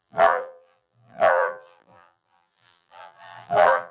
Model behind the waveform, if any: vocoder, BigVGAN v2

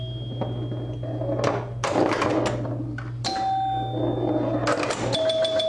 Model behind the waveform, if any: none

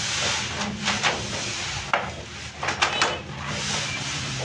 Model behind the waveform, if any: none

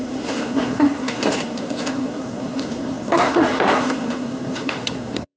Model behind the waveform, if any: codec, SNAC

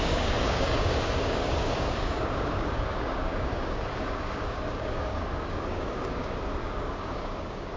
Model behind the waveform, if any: codec, DAC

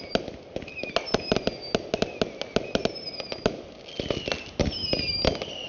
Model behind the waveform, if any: none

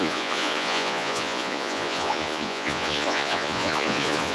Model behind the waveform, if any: vocoder, Vocos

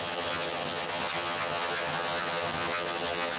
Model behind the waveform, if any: vocoder, HiFi-GAN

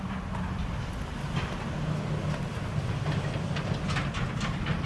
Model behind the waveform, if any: none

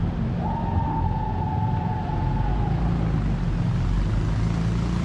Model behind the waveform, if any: none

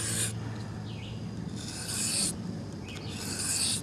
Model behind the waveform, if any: none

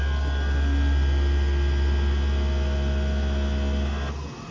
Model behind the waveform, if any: none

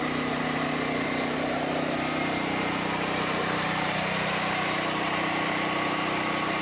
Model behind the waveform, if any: vocoder, BigVGAN v2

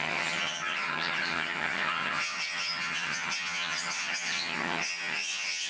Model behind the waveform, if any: vocoder, HiFi-GAN